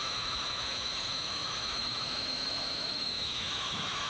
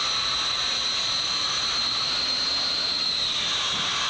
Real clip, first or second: second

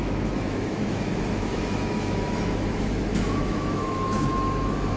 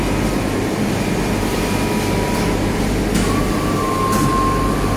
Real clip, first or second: second